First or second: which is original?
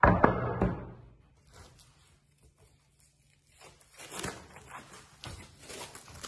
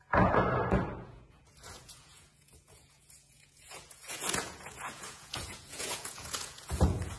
first